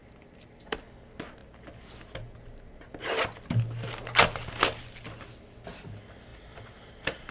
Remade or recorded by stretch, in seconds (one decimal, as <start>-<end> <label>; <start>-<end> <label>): 0.0-0.8 remade; 0.8-6.3 recorded; 6.3-7.3 remade